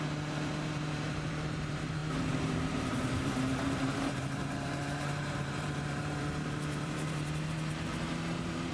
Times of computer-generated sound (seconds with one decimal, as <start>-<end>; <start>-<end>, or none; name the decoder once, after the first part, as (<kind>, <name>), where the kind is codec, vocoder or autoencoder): 0.0-8.7 (vocoder, BigVGAN v2)